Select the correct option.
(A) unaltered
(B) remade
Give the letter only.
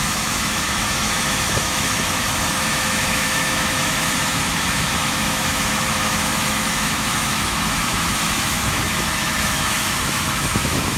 B